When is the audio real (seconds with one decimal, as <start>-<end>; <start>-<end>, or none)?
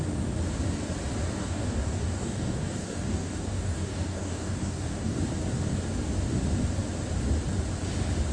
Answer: 0.0-1.4; 5.2-8.3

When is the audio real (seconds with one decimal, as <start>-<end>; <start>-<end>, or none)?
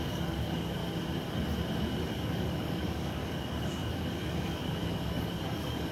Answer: 0.8-2.1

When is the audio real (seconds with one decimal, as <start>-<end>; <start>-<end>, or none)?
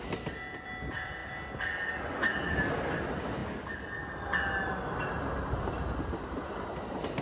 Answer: 0.0-7.2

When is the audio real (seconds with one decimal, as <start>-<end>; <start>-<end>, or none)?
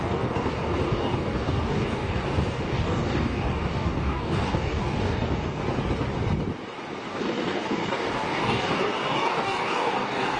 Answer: 5.6-7.1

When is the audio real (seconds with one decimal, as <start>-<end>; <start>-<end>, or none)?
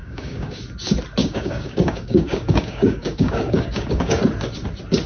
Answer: 0.6-1.2; 4.2-5.1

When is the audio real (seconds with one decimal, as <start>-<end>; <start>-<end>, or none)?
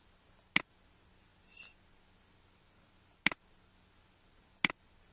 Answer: 0.0-5.1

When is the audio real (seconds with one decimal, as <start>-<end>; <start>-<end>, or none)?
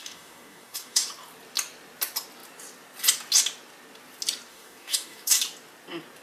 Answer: 1.1-4.5; 5.4-6.2